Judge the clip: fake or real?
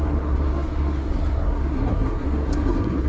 fake